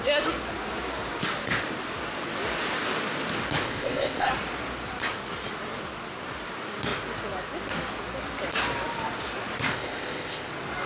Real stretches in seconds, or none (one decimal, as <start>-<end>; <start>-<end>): 0.0-3.6; 4.3-9.7; 10.5-10.9